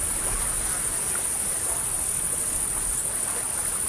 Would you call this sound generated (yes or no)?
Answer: no